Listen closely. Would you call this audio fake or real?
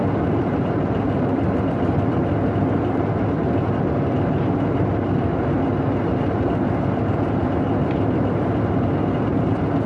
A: real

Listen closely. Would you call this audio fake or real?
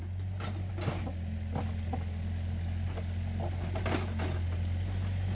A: real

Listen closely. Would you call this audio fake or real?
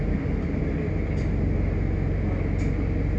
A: real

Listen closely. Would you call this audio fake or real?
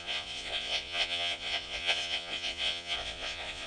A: fake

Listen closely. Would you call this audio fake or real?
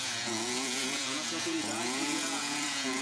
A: fake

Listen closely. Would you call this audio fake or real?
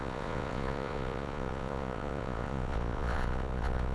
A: fake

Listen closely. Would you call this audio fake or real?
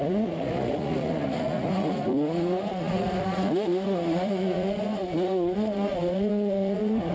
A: fake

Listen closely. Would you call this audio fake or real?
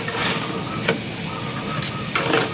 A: real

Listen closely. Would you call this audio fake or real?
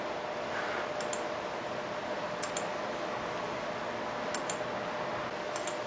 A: real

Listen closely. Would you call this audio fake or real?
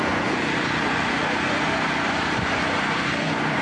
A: fake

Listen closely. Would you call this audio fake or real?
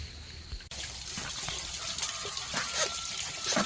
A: real